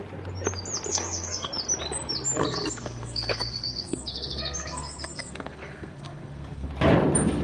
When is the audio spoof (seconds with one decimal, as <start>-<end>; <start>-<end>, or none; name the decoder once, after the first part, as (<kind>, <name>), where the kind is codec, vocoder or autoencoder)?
0.9-1.5 (codec, SNAC); 2.4-6.7